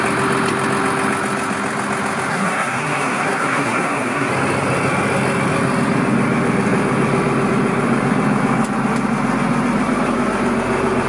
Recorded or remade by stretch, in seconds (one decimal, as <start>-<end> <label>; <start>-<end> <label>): 0.0-2.3 recorded; 2.3-4.3 remade; 4.3-11.1 recorded